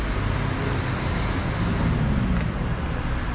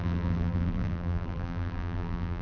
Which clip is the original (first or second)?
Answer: first